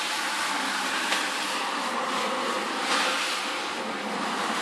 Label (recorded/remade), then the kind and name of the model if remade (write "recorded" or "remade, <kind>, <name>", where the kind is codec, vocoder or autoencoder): recorded